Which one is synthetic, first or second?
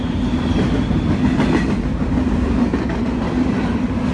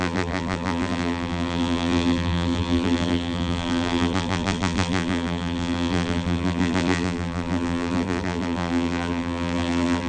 second